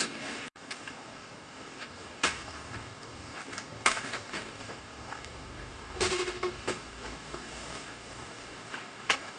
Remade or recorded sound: remade